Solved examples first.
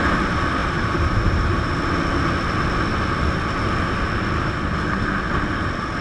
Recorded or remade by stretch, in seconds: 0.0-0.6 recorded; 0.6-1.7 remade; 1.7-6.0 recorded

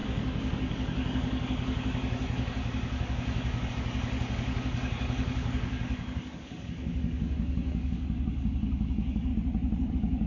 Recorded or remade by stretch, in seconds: 0.0-9.3 remade; 9.3-9.9 recorded; 9.9-10.3 remade

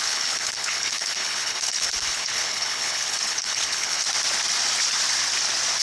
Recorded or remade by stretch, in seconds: 0.0-4.0 remade; 4.0-5.8 recorded